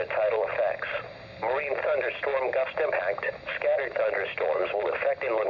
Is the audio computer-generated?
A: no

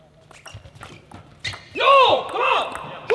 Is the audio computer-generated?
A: no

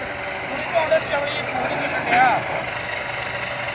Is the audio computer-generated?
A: no